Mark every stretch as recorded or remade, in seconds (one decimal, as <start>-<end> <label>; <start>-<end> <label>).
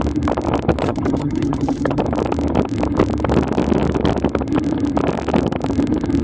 0.0-0.8 recorded; 0.8-2.0 remade; 2.0-6.2 recorded